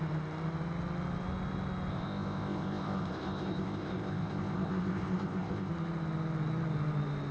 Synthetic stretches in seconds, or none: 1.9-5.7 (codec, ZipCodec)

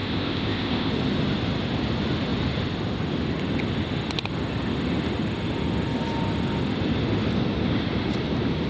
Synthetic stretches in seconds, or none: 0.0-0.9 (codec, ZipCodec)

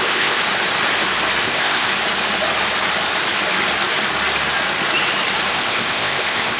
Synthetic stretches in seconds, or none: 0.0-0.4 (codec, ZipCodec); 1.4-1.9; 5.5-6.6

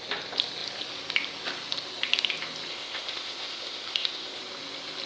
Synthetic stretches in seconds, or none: 2.7-4.4 (codec, ZipCodec)

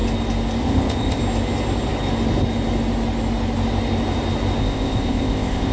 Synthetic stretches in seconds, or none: 0.6-1.2 (codec, ZipCodec); 4.6-5.7